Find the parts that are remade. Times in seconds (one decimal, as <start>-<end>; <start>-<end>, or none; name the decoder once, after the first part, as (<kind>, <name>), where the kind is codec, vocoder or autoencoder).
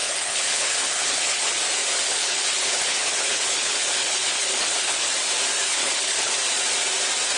0.0-1.6 (codec, HILCodec); 2.1-5.1; 5.7-6.3